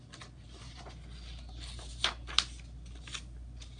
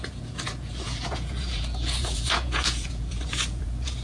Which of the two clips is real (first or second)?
first